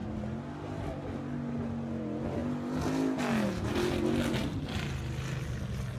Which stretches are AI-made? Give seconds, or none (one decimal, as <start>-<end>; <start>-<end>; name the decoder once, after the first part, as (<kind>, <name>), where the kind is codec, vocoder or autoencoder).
none